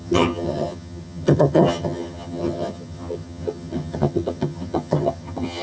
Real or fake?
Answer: fake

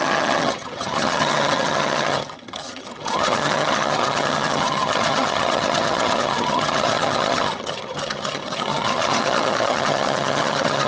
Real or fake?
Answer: fake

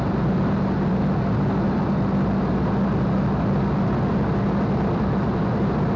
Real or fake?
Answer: real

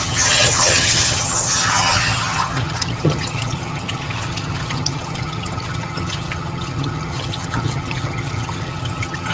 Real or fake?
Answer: fake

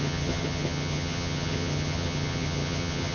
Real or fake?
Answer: fake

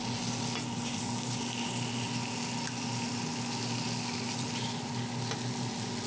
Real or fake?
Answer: real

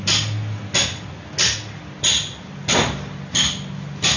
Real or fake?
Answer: real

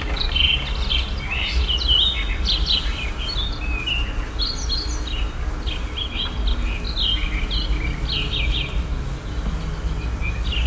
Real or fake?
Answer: real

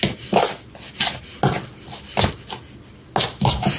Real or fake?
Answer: real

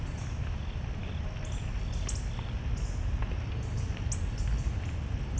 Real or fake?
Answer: real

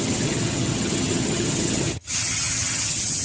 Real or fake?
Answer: fake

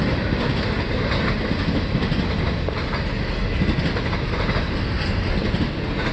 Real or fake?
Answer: real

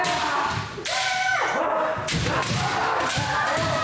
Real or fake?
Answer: real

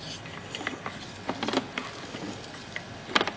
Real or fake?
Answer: real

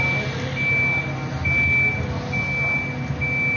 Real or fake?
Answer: real